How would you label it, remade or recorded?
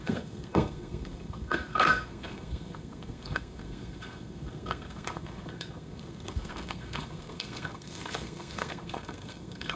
remade